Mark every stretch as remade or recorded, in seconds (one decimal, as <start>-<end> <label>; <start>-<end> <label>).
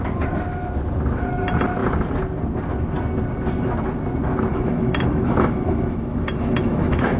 0.0-4.5 recorded; 4.5-7.2 remade